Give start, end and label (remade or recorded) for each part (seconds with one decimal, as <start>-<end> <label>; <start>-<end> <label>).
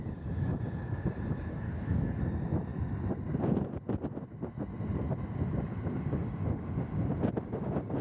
0.0-1.5 recorded; 1.5-2.2 remade; 2.2-8.0 recorded